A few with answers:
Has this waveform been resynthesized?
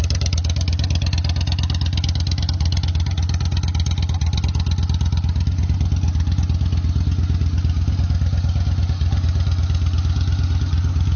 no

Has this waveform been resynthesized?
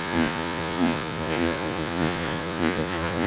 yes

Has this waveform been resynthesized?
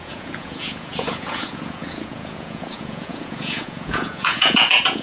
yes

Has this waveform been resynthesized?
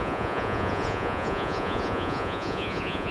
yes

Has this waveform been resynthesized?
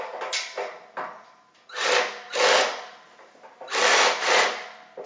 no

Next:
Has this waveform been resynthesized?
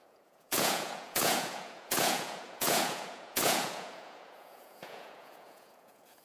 yes